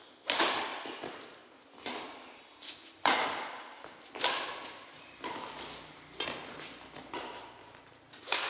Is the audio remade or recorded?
recorded